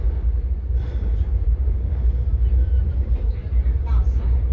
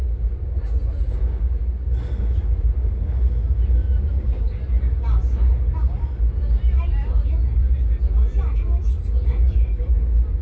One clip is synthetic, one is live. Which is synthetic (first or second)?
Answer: first